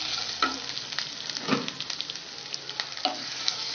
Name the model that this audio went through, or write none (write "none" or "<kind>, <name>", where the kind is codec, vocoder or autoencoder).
none